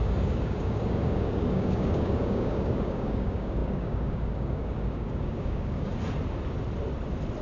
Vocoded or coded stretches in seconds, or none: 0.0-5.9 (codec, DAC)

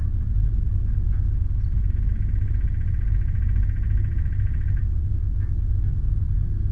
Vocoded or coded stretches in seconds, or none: none

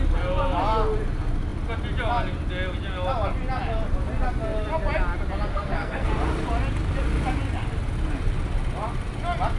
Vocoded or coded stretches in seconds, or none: 5.5-6.1 (codec, SNAC)

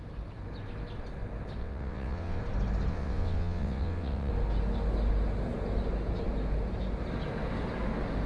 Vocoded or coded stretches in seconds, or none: 1.6-2.4 (vocoder, WaveNeXt); 2.9-4.3

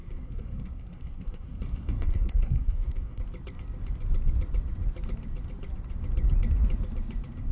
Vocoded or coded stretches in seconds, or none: 0.0-3.2 (codec, SNAC)